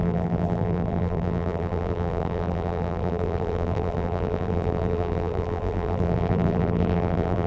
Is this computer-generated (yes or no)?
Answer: yes